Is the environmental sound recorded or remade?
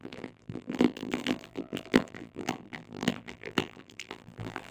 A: remade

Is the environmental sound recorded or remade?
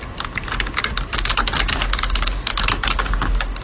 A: recorded